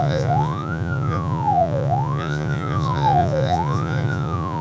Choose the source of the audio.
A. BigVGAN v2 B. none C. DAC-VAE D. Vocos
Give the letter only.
D